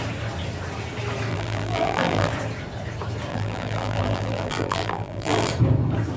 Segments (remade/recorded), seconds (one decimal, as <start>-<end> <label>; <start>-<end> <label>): 0.0-1.3 recorded; 1.3-2.3 remade; 2.3-3.3 recorded; 3.3-5.5 remade; 5.5-6.2 recorded